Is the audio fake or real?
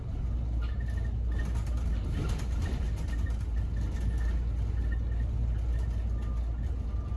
real